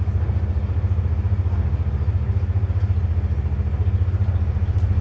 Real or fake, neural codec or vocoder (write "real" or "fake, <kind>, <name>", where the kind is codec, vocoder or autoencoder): real